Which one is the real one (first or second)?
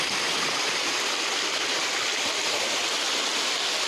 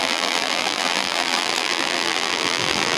first